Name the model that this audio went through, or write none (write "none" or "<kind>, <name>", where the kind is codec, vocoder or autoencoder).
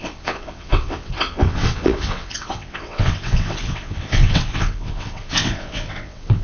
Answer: vocoder, WaveNeXt